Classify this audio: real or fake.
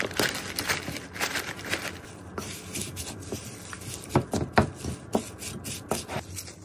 real